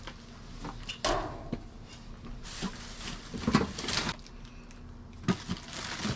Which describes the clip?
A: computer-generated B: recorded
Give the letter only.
B